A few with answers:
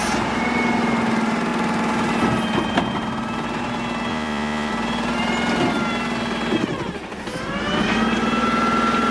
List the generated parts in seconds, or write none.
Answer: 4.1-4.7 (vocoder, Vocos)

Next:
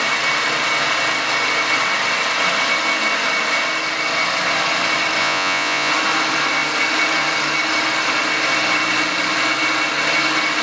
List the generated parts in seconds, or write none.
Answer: 5.2-5.9 (vocoder, Vocos)

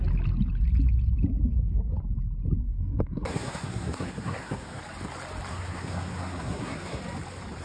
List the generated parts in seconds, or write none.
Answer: 2.6-4.8 (codec, SNAC); 5.5-7.0

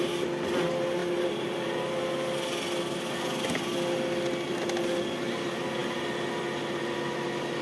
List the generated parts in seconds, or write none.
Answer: 1.0-2.0 (vocoder, BigVGAN v2)

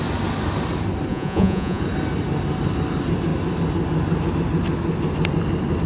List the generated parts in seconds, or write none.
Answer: 1.1-1.8 (vocoder, Vocos)

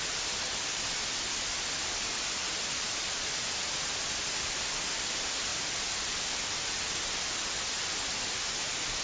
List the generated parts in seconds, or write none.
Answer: 2.4-5.1 (vocoder, BigVGAN v2); 5.5-7.3

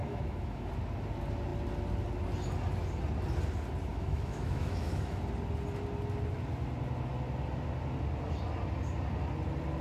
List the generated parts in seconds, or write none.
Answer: 0.0-0.7 (autoencoder, DAC-VAE); 3.9-5.2